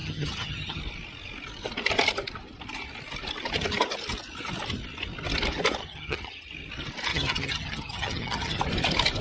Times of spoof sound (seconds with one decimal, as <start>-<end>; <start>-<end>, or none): 0.0-0.8; 5.8-6.5; 7.1-8.6